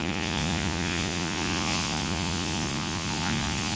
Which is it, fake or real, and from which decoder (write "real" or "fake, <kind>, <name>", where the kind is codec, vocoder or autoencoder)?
fake, vocoder, Vocos